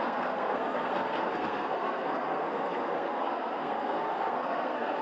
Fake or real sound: fake